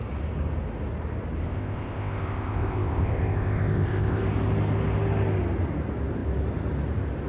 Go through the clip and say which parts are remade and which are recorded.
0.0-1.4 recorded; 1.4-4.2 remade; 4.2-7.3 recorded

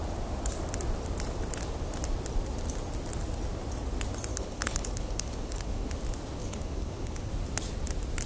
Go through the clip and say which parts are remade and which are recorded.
0.0-4.3 recorded; 4.3-5.9 remade; 5.9-6.4 recorded; 6.4-7.3 remade; 7.3-8.3 recorded